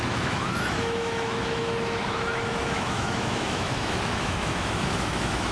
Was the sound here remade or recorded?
remade